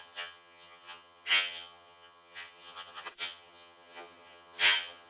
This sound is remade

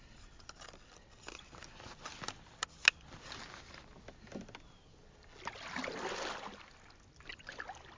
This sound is recorded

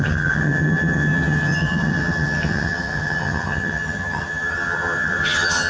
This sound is remade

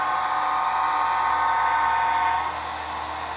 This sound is recorded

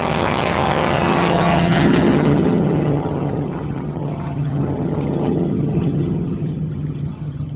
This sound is remade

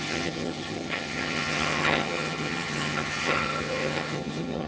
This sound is remade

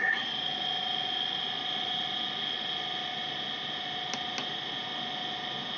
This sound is recorded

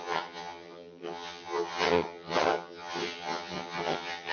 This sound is remade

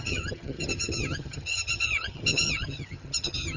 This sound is remade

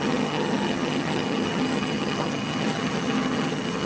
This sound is remade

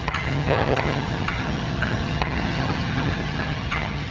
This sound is remade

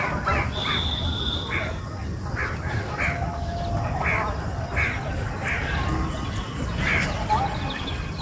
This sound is recorded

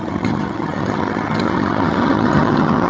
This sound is remade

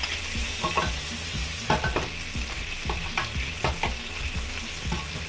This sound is recorded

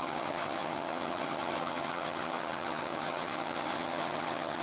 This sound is remade